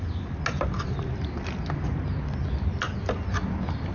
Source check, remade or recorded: recorded